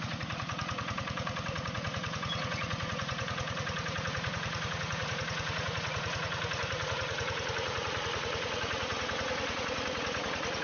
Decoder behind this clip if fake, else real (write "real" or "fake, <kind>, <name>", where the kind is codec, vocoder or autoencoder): fake, vocoder, Vocos